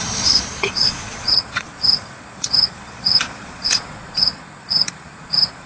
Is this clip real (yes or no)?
no